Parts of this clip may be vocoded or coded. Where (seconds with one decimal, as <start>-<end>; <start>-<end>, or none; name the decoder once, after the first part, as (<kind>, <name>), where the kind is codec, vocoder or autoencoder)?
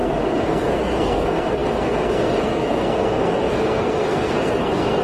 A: 0.0-5.0 (codec, SNAC)